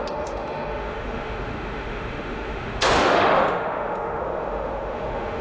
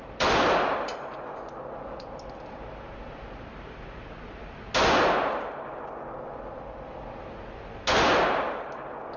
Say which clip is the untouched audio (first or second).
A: second